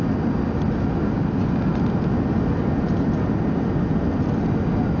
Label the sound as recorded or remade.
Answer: recorded